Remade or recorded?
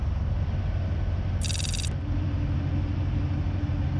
recorded